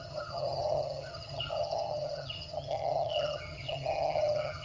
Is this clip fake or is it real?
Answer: fake